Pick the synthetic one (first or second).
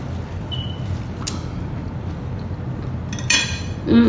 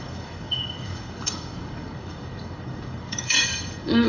second